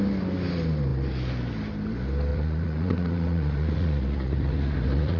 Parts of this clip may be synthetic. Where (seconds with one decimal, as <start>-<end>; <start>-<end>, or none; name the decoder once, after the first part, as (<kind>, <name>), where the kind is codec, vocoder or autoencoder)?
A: 2.3-5.2 (vocoder, Vocos)